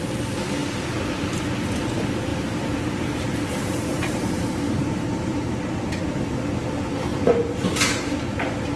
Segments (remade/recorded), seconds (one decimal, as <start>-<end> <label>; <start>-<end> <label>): 0.0-2.3 recorded; 2.3-5.6 remade; 5.6-7.1 recorded; 7.1-8.2 remade; 8.2-8.8 recorded